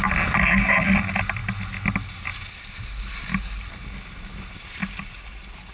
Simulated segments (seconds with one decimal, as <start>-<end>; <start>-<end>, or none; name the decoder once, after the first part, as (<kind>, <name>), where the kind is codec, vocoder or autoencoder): none